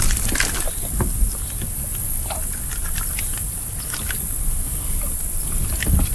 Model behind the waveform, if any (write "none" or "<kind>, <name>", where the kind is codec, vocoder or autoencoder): none